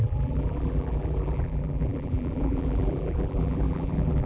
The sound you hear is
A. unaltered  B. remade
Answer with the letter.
B